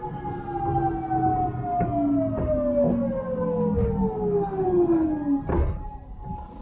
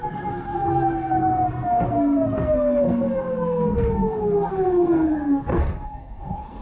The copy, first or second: second